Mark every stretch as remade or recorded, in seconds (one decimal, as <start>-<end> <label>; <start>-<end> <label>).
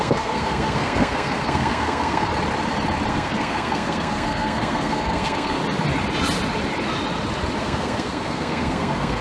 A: 0.0-2.3 remade; 2.3-3.1 recorded; 3.1-5.6 remade; 5.6-7.6 recorded; 7.6-9.2 remade